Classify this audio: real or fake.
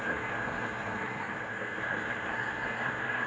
fake